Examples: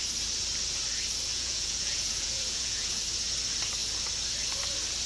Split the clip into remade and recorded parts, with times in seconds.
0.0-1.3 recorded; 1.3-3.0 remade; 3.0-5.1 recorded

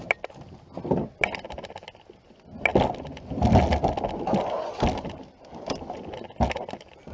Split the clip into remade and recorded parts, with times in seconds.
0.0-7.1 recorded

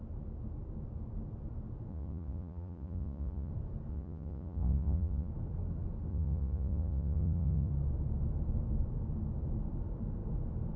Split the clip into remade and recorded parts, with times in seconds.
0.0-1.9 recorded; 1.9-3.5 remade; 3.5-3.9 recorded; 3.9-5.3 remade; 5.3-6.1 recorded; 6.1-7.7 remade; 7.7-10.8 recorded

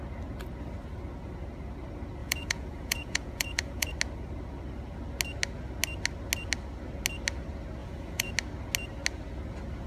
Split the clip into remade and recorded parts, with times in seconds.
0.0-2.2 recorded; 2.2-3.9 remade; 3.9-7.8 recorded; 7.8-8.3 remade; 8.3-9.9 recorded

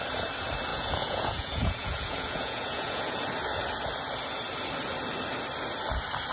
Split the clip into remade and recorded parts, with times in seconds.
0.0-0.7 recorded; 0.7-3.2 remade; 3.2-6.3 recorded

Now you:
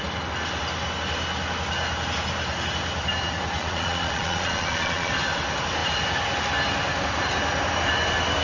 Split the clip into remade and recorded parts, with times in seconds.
0.0-3.6 recorded; 3.6-5.1 remade; 5.1-8.4 recorded

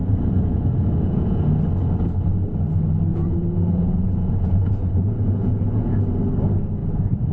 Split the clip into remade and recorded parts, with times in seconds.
0.0-1.5 remade; 1.5-3.1 recorded; 3.1-6.0 remade; 6.0-6.8 recorded; 6.8-7.3 remade